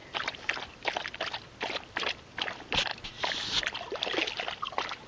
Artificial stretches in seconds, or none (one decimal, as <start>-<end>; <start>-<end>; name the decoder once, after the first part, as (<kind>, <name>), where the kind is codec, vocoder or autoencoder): 0.0-5.1 (vocoder, BigVGAN v2)